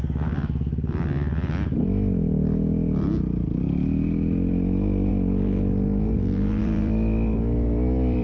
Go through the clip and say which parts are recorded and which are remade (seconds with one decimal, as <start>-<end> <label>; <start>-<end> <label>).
0.0-5.1 remade; 5.1-6.6 recorded; 6.6-8.2 remade